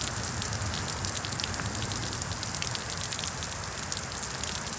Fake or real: real